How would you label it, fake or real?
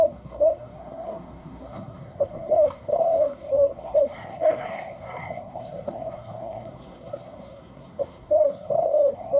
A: fake